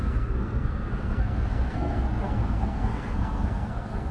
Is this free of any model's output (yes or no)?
no